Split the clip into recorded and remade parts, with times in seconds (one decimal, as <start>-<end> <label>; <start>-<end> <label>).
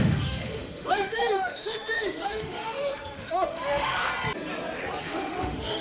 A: 0.0-4.1 remade; 4.1-5.0 recorded; 5.0-5.8 remade